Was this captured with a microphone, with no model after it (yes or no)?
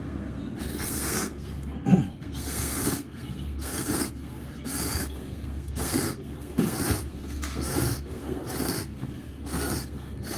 no